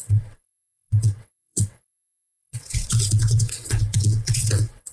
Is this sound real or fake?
fake